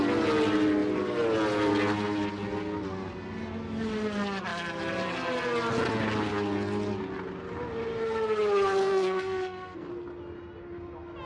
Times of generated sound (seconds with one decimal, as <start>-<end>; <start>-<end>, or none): 8.8-9.9